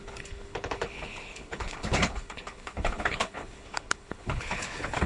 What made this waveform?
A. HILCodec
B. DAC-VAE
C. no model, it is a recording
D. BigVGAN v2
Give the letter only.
A